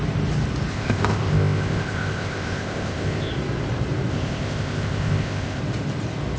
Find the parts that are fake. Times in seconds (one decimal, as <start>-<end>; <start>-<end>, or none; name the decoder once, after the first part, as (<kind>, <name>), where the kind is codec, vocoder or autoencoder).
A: 0.7-3.3 (codec, ZipCodec); 4.1-5.6